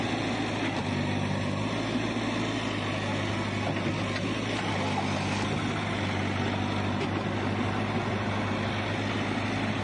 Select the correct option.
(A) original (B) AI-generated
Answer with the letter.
A